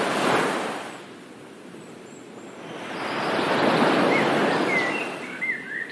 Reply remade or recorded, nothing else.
recorded